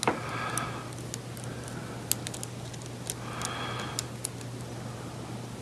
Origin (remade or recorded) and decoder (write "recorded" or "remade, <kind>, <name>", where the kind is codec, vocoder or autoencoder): recorded